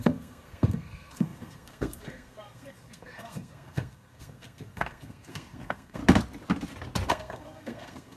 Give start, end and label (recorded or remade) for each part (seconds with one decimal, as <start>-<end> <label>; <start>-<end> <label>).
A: 0.0-6.0 remade; 6.0-7.1 recorded; 7.1-8.2 remade